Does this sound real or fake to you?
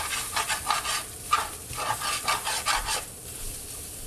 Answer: fake